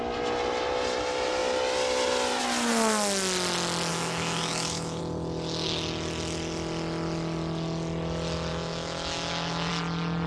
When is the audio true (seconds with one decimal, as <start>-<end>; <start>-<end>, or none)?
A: 0.0-3.9; 5.0-8.5; 9.7-10.3